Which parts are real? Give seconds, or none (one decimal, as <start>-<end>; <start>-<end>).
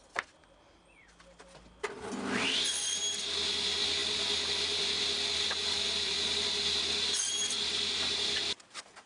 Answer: 0.0-4.0; 5.0-5.6; 6.5-9.1